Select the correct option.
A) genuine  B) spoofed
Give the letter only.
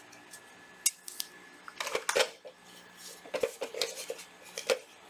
A